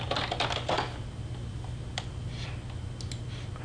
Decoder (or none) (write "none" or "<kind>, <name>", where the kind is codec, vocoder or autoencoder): none